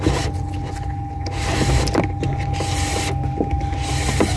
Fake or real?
real